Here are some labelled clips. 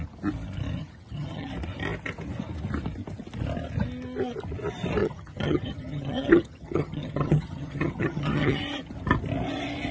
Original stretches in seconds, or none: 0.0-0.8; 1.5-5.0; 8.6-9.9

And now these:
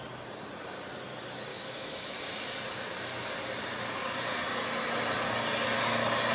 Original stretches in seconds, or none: 0.0-1.5; 2.1-6.3

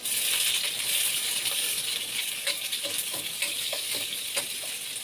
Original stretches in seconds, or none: 0.0-1.2; 4.2-5.0

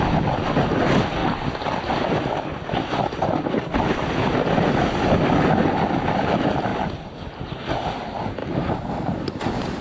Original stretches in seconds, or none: 0.0-8.4; 8.9-9.8

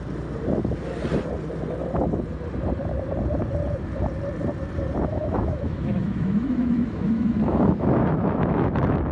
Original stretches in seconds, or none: 0.0-5.1